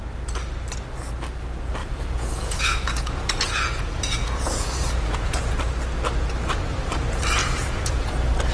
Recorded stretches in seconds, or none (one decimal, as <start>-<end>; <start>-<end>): 0.0-1.8; 5.6-7.4; 8.1-8.5